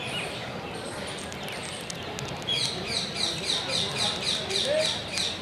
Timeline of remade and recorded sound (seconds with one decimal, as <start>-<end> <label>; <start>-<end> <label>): 0.0-5.4 recorded